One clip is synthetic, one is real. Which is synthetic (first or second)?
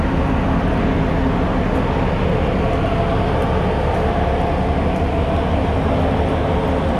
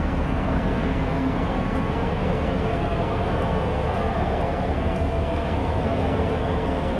second